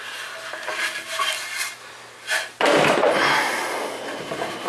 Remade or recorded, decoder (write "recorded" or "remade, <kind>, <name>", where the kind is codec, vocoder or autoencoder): recorded